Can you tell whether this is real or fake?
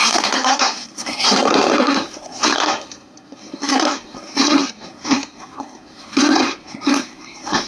fake